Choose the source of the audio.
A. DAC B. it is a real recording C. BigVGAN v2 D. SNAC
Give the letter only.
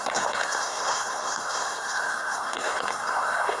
D